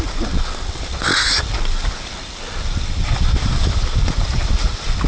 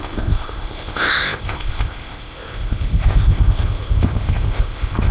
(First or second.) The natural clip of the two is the first